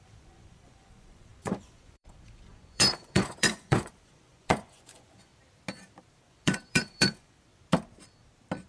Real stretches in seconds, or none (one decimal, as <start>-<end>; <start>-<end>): 5.3-6.2; 7.5-8.7